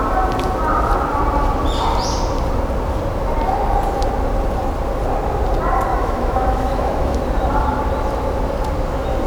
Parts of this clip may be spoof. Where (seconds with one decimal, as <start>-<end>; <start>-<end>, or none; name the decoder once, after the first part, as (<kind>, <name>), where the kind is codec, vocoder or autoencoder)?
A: 5.9-7.2 (autoencoder, DAC-VAE)